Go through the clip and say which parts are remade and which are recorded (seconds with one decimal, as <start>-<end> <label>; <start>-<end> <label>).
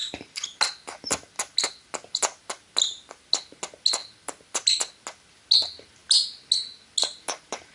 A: 0.0-7.7 recorded